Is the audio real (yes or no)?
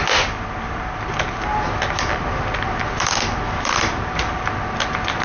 yes